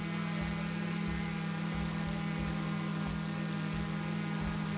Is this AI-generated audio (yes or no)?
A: no